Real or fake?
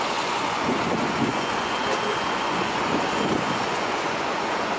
fake